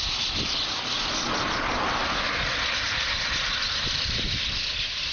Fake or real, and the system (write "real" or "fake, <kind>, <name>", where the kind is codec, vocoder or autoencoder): real